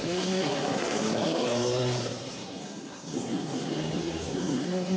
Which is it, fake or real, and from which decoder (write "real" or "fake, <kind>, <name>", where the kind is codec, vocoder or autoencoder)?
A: fake, codec, SNAC